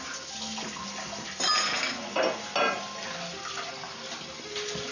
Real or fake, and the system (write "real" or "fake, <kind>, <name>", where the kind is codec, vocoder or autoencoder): real